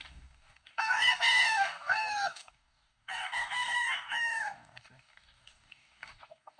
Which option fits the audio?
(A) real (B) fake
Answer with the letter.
B